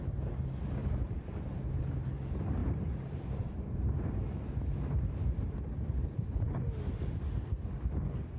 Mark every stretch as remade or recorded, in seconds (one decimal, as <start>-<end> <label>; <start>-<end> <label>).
0.0-0.8 recorded; 0.8-1.7 remade; 1.7-2.6 recorded; 2.6-6.6 remade; 6.6-8.4 recorded